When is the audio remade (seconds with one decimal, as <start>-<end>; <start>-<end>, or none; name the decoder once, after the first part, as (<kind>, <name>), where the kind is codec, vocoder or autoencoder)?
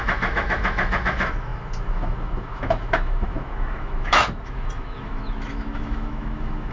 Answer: 0.0-6.7 (autoencoder, DAC-VAE)